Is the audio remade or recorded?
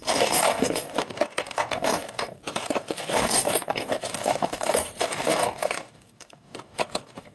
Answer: remade